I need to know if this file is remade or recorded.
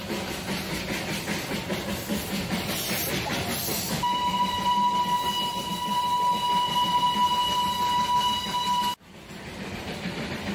recorded